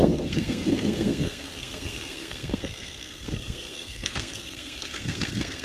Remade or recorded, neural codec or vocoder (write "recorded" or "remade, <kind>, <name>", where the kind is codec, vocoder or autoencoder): remade, codec, SNAC